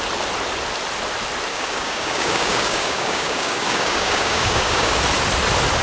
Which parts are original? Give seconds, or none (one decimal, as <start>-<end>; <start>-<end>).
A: 0.0-1.5; 5.0-5.8